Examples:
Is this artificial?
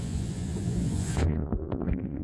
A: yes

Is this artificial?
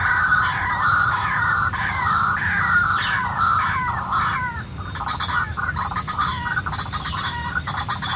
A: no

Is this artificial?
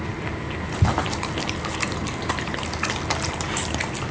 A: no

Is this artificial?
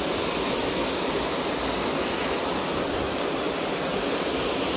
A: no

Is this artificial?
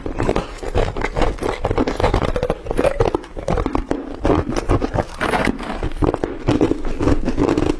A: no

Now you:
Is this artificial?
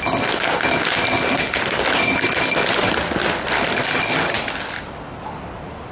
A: no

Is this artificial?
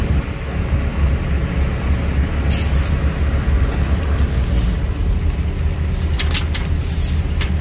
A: no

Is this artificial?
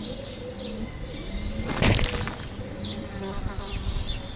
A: no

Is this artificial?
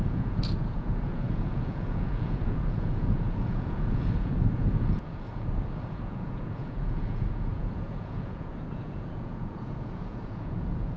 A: yes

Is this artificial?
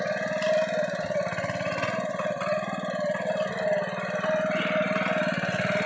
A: no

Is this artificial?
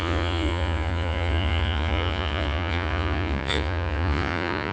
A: yes